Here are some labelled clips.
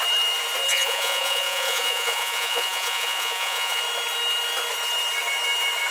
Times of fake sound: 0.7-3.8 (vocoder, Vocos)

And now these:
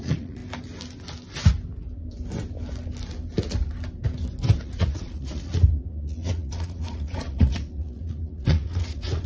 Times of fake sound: 0.0-0.4 (vocoder, Vocos); 4.6-9.3

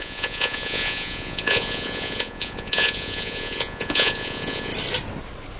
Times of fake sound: 0.0-4.7 (vocoder, Vocos)

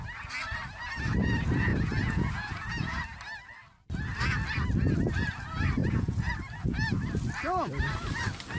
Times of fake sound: 1.7-3.0 (vocoder, Vocos); 5.8-6.3

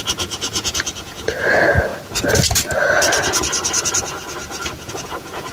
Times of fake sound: 0.0-1.9 (vocoder, Vocos); 4.9-5.5

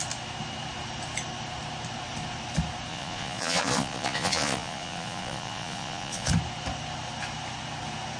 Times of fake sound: 2.9-6.3 (vocoder, Vocos)

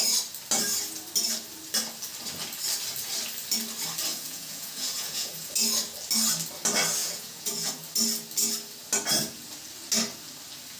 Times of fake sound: 4.1-5.5 (vocoder, Vocos); 7.0-7.8

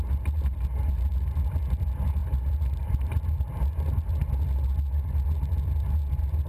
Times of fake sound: none